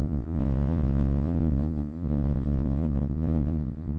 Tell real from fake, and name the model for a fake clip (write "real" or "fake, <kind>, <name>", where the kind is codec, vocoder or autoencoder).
fake, vocoder, Vocos